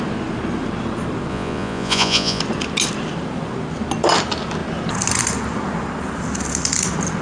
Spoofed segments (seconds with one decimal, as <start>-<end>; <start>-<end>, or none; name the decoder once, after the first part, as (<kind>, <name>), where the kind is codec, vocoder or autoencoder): 1.3-2.4 (vocoder, Vocos)